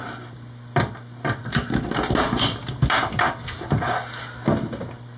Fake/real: real